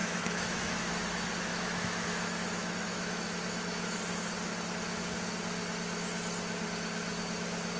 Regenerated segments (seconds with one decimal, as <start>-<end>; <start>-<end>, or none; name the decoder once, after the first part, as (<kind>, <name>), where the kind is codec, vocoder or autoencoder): 0.0-0.9 (autoencoder, DAC-VAE); 1.5-4.0